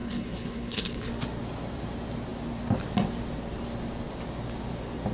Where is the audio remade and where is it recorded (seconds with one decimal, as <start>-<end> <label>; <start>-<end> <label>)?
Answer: 0.0-1.1 remade; 1.1-5.1 recorded